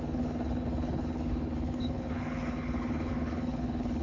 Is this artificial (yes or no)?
yes